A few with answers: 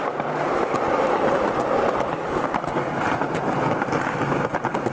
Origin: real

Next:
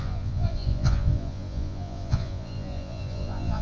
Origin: fake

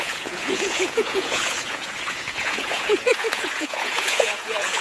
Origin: fake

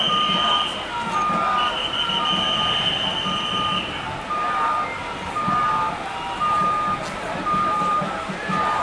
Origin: real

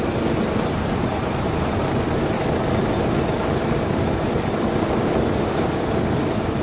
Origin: real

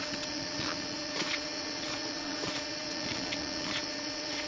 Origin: fake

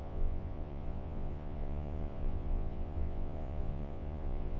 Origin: fake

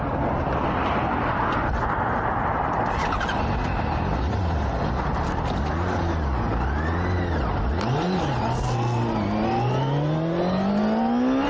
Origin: real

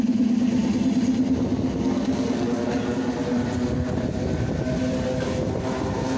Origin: real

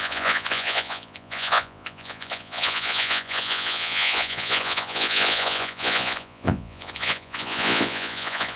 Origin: fake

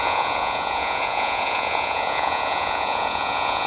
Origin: fake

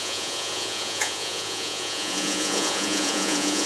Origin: fake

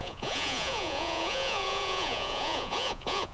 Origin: fake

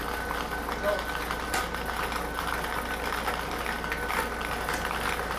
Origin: real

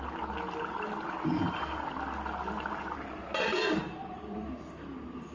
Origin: real